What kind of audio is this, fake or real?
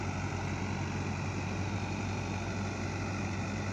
real